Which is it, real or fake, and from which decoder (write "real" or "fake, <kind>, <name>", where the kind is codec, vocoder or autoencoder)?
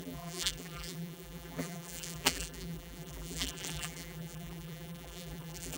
fake, vocoder, BigVGAN v2